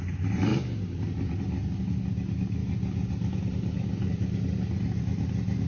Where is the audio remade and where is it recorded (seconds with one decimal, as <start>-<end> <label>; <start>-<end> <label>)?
0.0-5.7 recorded